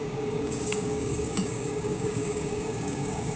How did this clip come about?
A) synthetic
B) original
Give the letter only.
A